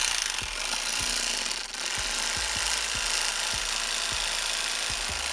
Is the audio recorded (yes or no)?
yes